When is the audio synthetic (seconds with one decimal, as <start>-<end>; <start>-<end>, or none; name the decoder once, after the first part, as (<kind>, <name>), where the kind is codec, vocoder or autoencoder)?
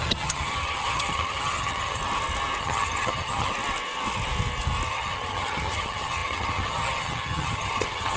0.0-2.0 (vocoder, HiFi-GAN); 2.6-3.5; 4.9-8.2